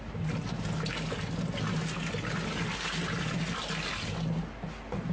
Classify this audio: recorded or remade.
recorded